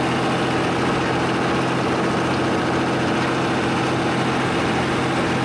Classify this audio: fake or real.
real